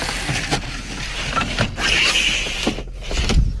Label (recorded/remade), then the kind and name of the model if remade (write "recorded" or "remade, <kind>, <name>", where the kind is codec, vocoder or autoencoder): recorded